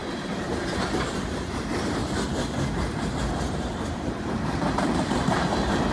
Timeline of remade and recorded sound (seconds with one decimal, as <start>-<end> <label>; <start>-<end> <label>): 0.0-2.0 remade; 2.0-3.1 recorded; 3.1-5.9 remade